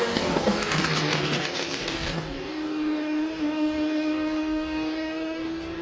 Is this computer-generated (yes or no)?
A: yes